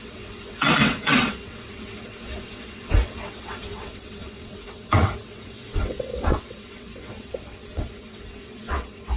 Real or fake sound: fake